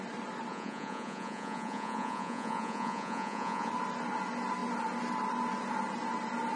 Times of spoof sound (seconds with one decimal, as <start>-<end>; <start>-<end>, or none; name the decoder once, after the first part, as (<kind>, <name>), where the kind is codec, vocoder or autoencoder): 0.5-3.7 (vocoder, Vocos)